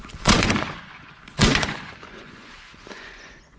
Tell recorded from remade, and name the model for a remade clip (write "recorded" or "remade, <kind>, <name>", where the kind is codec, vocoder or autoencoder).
remade, vocoder, Vocos